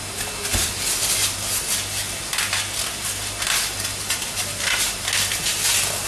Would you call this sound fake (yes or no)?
no